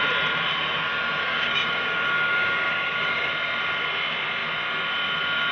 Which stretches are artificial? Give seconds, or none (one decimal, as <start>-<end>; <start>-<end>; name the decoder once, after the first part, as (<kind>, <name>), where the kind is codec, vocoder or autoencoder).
1.2-3.3 (codec, DAC)